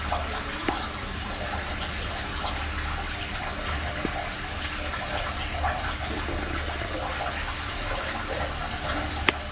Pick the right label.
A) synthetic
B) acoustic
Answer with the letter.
B